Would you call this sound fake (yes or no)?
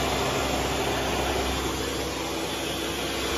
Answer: no